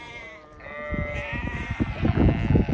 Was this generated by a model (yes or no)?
no